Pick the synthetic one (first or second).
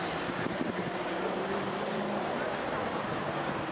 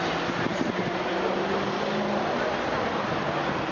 first